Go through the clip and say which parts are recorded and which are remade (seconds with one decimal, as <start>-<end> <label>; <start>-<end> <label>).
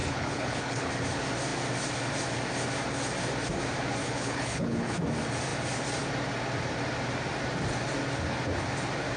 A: 0.0-0.9 remade; 0.9-4.0 recorded; 4.0-5.0 remade; 5.0-9.2 recorded